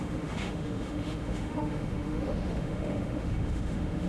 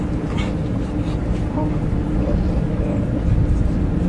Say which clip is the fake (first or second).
first